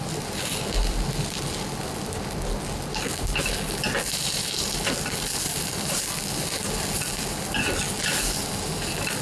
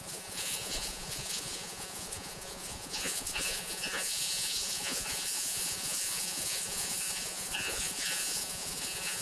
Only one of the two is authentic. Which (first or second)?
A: first